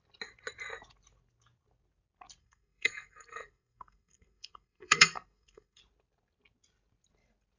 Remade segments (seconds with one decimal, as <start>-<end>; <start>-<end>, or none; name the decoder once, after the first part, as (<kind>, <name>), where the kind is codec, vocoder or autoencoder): 2.4-5.8 (codec, SNAC)